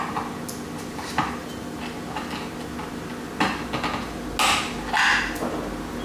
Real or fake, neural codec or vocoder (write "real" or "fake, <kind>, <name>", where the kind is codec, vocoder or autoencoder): real